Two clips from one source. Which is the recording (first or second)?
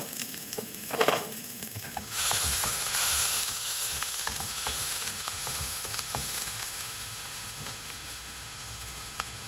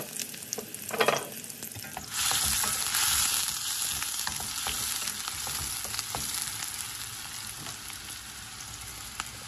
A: second